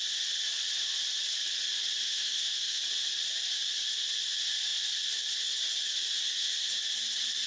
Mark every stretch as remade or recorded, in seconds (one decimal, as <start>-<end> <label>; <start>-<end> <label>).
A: 0.0-2.0 recorded; 2.0-2.8 remade; 2.8-7.5 recorded